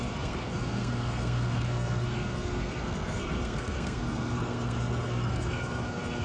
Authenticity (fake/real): fake